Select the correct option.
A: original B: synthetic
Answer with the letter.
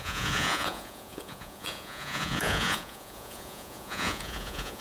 B